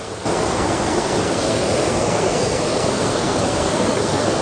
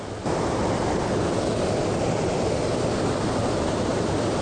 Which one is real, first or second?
second